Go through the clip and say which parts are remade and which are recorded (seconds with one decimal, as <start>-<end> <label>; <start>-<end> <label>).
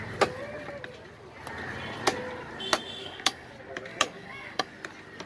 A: 0.0-3.0 recorded; 3.0-3.5 remade; 3.5-3.9 recorded; 3.9-4.7 remade; 4.7-5.3 recorded